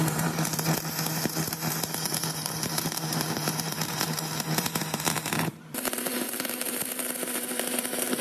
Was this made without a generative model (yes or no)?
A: no